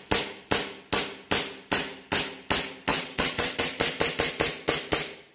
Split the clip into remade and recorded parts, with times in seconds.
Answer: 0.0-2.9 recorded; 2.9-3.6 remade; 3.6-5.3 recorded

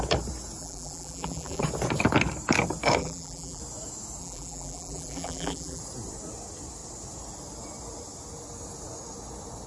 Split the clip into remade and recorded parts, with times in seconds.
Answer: 0.0-0.6 recorded; 0.6-1.6 remade; 1.6-3.0 recorded; 3.0-3.6 remade; 3.6-4.2 recorded; 4.2-5.8 remade; 5.8-9.7 recorded

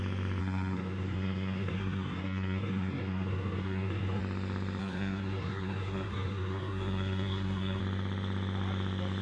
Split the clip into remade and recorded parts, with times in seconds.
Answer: 0.0-0.4 recorded; 0.4-4.2 remade; 4.2-4.8 recorded; 4.8-7.8 remade; 7.8-9.2 recorded

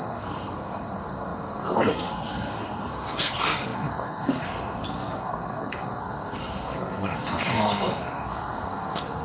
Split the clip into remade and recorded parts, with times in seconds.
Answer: 0.0-9.2 remade